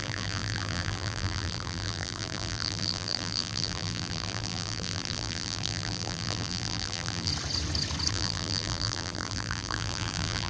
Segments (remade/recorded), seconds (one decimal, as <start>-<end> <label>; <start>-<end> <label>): 0.0-7.3 remade; 7.3-8.1 recorded; 8.1-10.5 remade